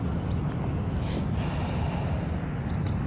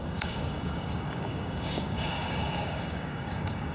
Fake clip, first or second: second